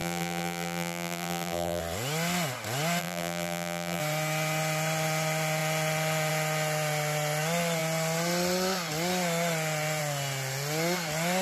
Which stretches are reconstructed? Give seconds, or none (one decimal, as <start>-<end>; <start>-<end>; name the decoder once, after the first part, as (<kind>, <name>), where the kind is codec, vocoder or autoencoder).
0.0-1.8 (vocoder, BigVGAN v2); 3.0-4.0

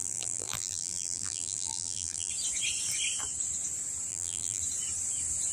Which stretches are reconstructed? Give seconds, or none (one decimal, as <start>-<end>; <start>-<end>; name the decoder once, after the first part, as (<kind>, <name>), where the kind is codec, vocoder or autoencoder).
0.0-2.3 (vocoder, BigVGAN v2); 4.1-4.6

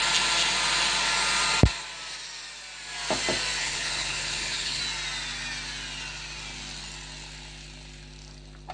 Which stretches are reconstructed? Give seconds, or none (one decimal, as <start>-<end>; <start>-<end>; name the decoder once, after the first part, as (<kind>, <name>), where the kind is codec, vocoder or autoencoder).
3.6-4.8 (codec, HILCodec)

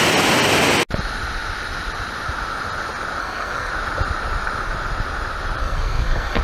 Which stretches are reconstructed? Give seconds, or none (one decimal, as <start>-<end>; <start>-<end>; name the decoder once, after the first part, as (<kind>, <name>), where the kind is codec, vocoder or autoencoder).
3.2-3.7 (codec, SNAC); 5.6-6.4

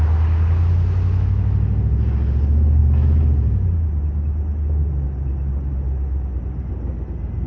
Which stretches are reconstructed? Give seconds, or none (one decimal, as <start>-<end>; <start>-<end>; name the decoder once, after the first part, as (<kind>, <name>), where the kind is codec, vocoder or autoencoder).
none

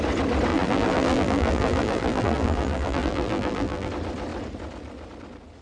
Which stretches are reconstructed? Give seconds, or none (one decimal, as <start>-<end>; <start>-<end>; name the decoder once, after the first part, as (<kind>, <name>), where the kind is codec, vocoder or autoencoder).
0.5-3.9 (vocoder, BigVGAN v2)